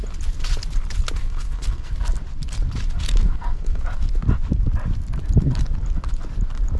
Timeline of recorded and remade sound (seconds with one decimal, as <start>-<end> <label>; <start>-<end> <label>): 0.0-1.2 recorded; 1.2-1.9 remade; 1.9-3.2 recorded; 3.2-3.8 remade; 3.8-6.8 recorded